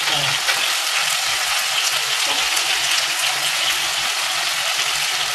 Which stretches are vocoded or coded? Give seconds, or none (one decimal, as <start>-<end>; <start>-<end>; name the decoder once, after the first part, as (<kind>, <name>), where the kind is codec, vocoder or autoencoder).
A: 1.3-4.5 (vocoder, Vocos)